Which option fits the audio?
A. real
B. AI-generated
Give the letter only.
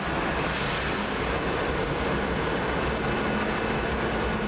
A